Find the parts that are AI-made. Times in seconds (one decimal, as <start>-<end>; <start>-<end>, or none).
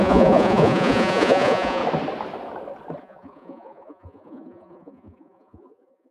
0.0-1.8; 3.0-6.1